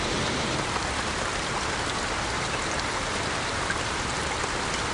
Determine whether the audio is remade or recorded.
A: recorded